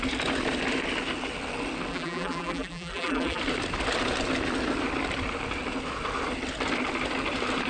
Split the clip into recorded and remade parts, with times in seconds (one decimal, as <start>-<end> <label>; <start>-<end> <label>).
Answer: 0.0-1.9 recorded; 1.9-3.4 remade; 3.4-7.7 recorded